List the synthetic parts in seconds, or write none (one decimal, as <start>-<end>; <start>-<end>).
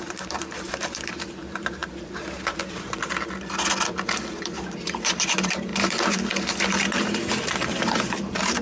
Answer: 0.0-3.0; 4.3-8.6